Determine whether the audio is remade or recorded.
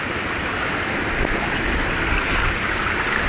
recorded